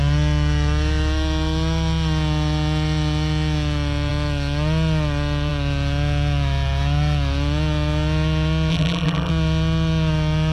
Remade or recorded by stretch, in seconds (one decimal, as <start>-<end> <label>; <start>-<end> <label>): 0.0-8.7 recorded; 8.7-9.3 remade; 9.3-10.5 recorded